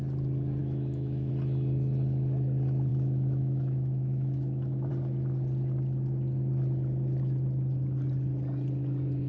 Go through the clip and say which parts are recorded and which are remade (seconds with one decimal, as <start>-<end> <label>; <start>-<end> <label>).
0.0-0.6 recorded; 0.6-1.3 remade; 1.3-2.9 recorded; 2.9-4.9 remade; 4.9-9.3 recorded